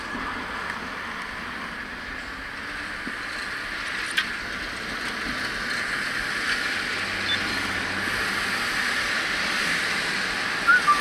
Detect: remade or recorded recorded